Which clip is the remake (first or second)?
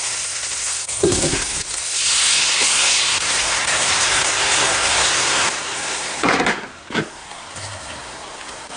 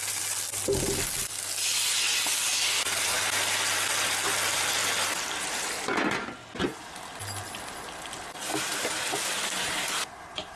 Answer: first